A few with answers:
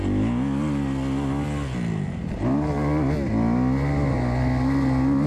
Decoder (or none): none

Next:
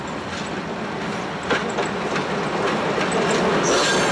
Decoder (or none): none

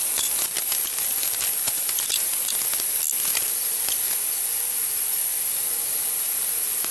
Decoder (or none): none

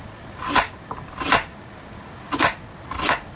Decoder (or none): none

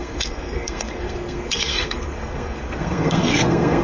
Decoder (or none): codec, SNAC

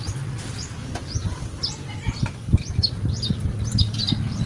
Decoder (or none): none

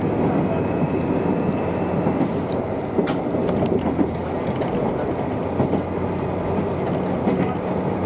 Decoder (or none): none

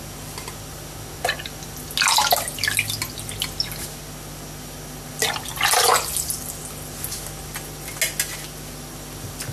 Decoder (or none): none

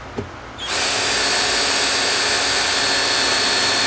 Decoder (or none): none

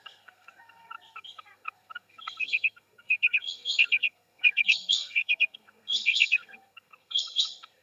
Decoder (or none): codec, SNAC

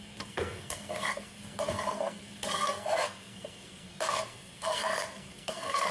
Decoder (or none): codec, SNAC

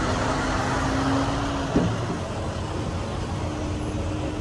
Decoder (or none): none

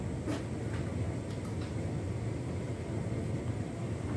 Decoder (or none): none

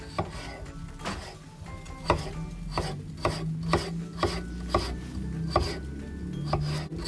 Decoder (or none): none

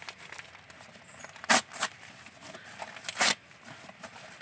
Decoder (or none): none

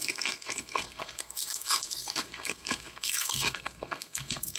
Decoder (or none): codec, SNAC